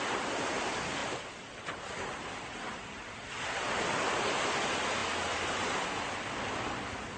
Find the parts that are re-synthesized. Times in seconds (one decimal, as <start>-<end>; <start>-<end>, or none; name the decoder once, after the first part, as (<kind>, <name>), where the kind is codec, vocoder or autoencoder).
none